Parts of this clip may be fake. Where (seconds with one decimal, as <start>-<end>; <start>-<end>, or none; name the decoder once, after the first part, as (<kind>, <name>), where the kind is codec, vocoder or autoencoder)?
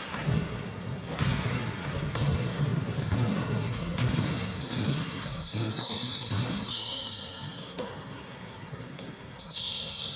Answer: 0.0-10.2 (codec, SNAC)